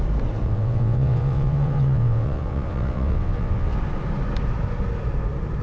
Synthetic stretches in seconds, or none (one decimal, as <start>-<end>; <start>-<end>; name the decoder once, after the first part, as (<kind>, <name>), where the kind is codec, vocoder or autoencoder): 0.4-3.8 (vocoder, WaveNeXt)